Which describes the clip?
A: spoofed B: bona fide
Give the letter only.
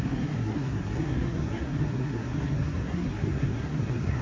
A